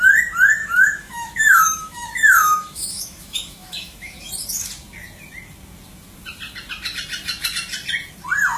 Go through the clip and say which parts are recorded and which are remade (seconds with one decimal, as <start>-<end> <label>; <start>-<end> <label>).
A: 0.0-0.6 recorded; 0.6-4.3 remade; 4.3-8.6 recorded